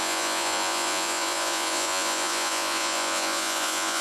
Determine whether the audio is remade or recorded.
remade